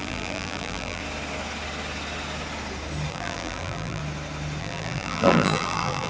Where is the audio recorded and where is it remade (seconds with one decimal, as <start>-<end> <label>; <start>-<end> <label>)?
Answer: 0.0-1.0 remade; 1.0-3.1 recorded; 3.1-4.0 remade; 4.0-4.6 recorded; 4.6-6.1 remade